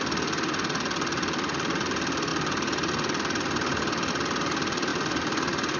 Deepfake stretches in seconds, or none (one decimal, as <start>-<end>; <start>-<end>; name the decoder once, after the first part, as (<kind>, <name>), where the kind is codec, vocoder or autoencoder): none